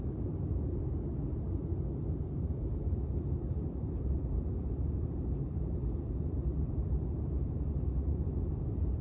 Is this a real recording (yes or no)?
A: no